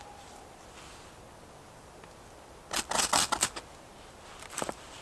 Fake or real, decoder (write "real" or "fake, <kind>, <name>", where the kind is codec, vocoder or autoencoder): real